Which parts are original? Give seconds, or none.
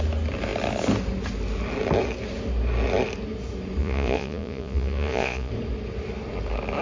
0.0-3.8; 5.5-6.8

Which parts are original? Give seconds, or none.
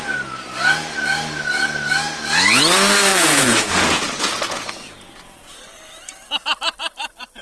0.0-3.1; 5.7-7.4